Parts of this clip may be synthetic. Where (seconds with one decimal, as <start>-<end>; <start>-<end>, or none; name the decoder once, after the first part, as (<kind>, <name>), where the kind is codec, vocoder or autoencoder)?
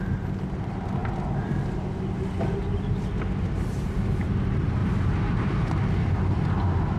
4.8-5.7 (vocoder, BigVGAN v2)